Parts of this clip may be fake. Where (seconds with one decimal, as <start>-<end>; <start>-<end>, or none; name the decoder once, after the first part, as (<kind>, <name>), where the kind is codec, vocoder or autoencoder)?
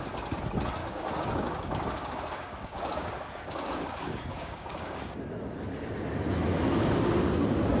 0.8-5.2 (codec, DAC)